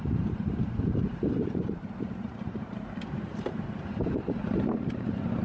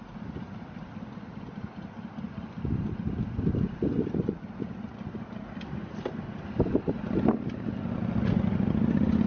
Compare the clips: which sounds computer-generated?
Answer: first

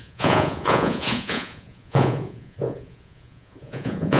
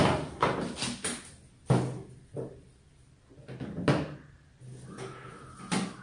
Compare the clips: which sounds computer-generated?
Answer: first